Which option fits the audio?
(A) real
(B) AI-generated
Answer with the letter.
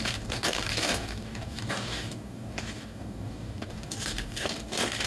B